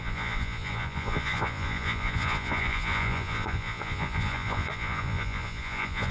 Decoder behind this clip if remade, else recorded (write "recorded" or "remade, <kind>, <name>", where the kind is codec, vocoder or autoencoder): remade, vocoder, Vocos